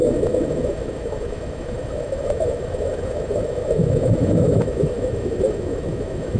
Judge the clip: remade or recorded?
remade